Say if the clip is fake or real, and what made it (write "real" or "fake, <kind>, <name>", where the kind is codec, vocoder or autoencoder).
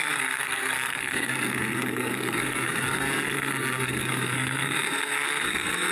fake, codec, SNAC